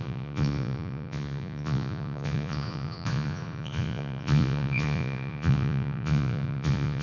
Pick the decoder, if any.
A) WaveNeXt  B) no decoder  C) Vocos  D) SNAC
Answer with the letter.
C